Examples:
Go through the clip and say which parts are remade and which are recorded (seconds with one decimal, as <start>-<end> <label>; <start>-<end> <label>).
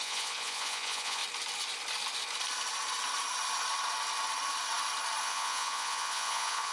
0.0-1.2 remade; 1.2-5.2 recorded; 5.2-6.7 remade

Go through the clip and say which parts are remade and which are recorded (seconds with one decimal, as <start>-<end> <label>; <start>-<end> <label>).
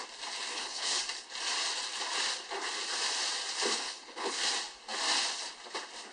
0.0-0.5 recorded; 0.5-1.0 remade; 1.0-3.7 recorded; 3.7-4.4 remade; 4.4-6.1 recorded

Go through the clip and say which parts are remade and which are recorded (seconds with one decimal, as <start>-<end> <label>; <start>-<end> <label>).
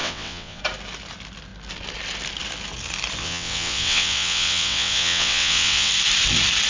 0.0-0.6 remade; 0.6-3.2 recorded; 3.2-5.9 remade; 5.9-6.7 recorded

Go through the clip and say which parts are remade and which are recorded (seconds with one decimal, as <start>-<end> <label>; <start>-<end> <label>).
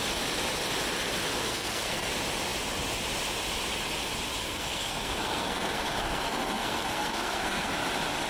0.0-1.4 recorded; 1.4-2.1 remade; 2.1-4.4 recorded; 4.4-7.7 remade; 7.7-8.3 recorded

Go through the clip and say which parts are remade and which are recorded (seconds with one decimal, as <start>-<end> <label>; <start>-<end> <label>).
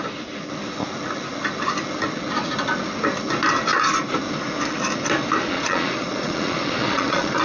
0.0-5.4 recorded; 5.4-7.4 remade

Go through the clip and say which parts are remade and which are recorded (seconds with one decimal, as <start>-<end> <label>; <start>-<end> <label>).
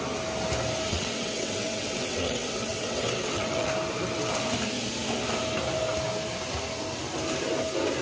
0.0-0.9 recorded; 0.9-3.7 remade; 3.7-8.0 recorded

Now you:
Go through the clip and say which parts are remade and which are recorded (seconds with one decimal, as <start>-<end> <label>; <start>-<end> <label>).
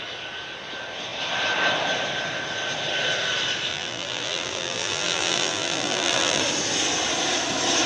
0.0-3.7 recorded; 3.7-6.4 remade; 6.4-7.9 recorded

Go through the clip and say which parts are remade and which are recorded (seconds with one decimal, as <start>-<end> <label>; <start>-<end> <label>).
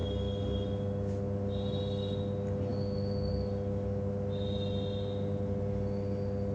0.0-6.5 recorded